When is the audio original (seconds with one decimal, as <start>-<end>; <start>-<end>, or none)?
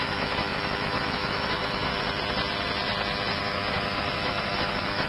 1.9-3.4